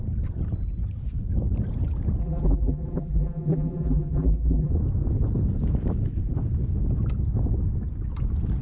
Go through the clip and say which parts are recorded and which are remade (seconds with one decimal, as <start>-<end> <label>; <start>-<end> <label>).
0.0-2.2 recorded; 2.2-4.7 remade; 4.7-8.6 recorded

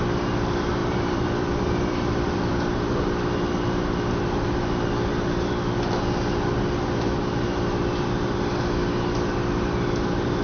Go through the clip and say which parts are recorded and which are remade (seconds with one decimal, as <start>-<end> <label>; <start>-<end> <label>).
0.0-0.8 recorded; 0.8-2.5 remade; 2.5-10.4 recorded

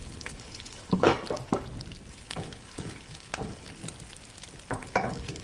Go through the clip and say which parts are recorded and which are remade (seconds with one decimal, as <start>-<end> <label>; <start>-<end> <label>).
0.0-1.1 remade; 1.1-2.1 recorded; 2.1-3.8 remade; 3.8-4.7 recorded; 4.7-5.4 remade

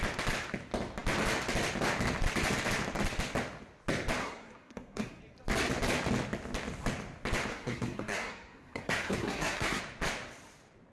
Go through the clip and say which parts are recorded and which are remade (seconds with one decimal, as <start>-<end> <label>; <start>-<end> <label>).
0.0-4.2 recorded; 4.2-5.2 remade; 5.2-7.5 recorded; 7.5-9.8 remade; 9.8-10.9 recorded

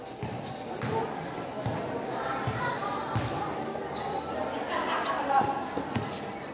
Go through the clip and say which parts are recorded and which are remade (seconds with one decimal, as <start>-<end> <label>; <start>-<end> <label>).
0.0-6.5 recorded

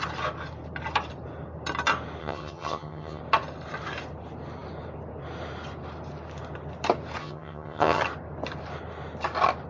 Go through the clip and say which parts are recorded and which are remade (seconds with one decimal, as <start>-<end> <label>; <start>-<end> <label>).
0.0-2.2 recorded; 2.2-3.2 remade; 3.2-7.2 recorded; 7.2-8.0 remade; 8.0-9.7 recorded